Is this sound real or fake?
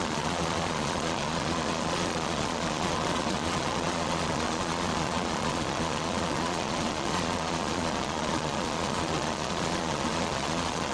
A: fake